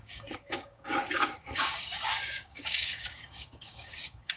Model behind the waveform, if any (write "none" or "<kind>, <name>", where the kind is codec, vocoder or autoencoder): codec, DAC